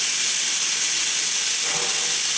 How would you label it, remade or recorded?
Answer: recorded